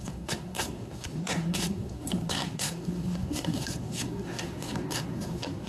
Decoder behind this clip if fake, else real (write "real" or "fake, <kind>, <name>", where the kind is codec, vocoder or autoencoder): fake, codec, SNAC